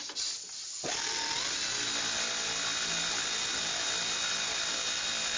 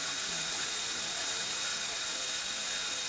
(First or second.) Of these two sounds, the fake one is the second